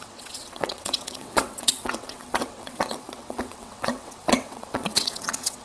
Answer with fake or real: fake